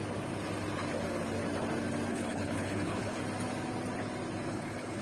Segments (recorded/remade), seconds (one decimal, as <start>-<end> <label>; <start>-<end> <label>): 0.0-2.1 recorded; 2.1-3.2 remade; 3.2-4.5 recorded; 4.5-5.0 remade